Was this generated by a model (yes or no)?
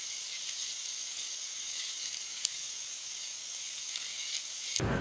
yes